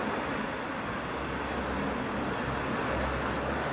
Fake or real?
real